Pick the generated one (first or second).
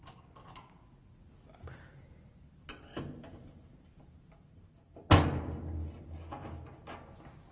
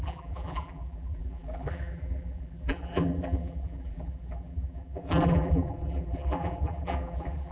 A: second